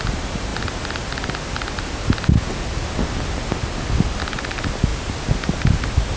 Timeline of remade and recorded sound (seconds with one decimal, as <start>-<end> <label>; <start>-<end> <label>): 0.0-6.2 recorded